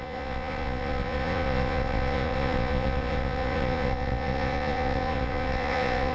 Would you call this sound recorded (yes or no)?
no